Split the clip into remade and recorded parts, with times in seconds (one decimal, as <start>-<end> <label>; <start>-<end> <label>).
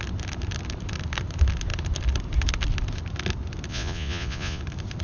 0.0-3.7 recorded; 3.7-4.6 remade; 4.6-5.0 recorded